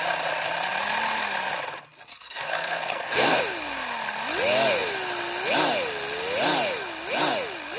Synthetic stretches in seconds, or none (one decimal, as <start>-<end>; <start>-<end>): 2.1-3.4

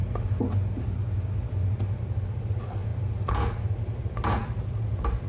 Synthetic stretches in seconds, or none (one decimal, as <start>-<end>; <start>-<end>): 4.4-5.3

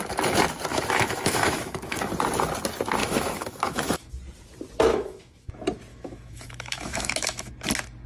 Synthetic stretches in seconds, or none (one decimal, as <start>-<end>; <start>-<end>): 0.7-2.1; 3.0-4.1; 4.9-5.5; 5.9-7.5

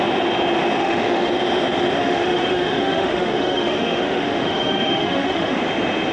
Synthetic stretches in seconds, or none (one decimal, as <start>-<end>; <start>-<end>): 0.8-1.3; 2.0-5.6

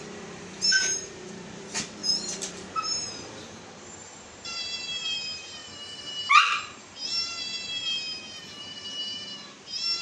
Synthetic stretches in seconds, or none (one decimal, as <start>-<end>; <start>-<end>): 0.0-5.6; 6.1-10.0